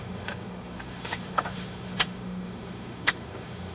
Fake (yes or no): yes